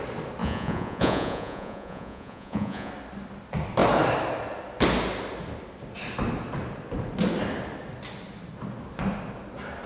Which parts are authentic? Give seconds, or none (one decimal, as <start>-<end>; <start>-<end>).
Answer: 0.0-0.4; 2.9-9.9